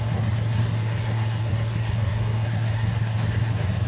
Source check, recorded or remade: remade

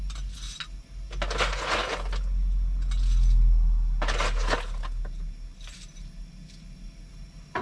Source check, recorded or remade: recorded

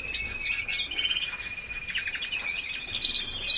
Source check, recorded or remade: recorded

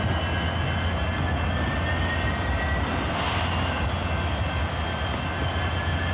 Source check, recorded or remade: recorded